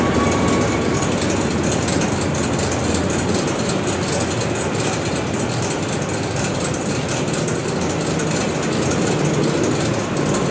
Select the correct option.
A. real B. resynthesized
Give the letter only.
A